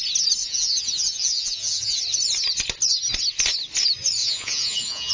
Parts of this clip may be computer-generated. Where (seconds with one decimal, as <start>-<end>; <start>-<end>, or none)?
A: 0.4-2.0; 4.2-5.1